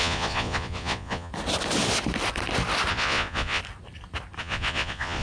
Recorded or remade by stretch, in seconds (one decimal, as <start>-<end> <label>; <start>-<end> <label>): 0.0-1.3 remade; 1.3-2.9 recorded; 2.9-3.6 remade; 3.6-4.4 recorded; 4.4-5.2 remade